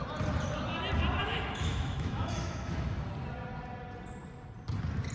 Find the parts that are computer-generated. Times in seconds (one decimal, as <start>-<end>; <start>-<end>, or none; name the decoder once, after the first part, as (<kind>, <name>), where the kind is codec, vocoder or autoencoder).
1.2-3.1 (autoencoder, DAC-VAE)